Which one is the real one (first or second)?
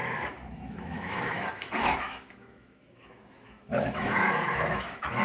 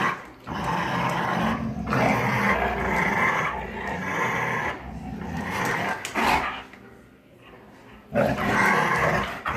second